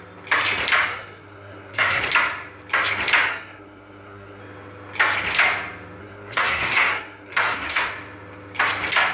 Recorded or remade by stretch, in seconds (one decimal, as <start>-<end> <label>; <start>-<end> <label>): 0.0-0.9 recorded; 0.9-2.0 remade; 2.0-3.3 recorded; 3.3-4.4 remade; 4.4-6.0 recorded; 6.0-7.9 remade; 7.9-9.1 recorded